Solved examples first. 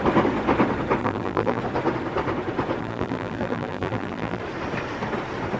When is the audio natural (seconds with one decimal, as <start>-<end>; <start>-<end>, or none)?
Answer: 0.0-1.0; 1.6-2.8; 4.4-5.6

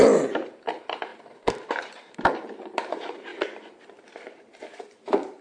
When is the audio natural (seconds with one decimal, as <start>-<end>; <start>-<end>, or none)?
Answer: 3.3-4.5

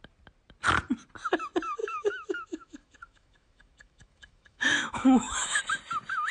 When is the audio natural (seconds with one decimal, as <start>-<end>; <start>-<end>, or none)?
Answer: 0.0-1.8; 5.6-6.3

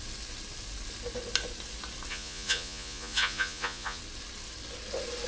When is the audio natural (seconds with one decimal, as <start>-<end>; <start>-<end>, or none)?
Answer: 0.0-2.1; 4.0-5.3

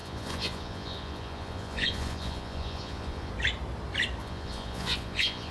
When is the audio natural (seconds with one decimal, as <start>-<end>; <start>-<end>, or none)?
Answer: 3.3-4.2

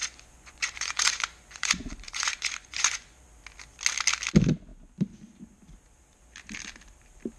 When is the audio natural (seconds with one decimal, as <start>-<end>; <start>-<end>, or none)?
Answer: 3.2-7.4

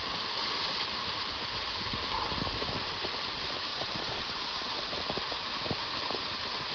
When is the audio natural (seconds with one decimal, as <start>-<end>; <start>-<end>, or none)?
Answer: 0.0-3.7; 5.0-6.7

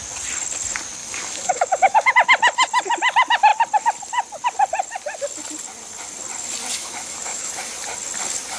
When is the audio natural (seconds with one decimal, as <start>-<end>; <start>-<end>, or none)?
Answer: 0.0-1.0; 2.1-6.7; 7.7-8.6